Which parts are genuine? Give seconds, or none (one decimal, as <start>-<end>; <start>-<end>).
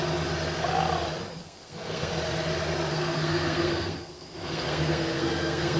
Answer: 0.0-1.4; 2.1-2.9